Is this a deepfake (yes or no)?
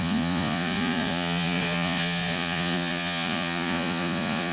yes